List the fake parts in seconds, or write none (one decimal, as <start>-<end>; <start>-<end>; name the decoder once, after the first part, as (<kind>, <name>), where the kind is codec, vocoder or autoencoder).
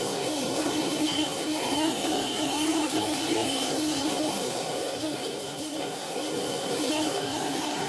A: 0.0-7.9 (codec, SNAC)